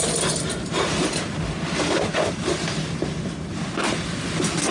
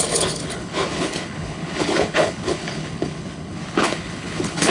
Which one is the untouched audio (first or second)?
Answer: first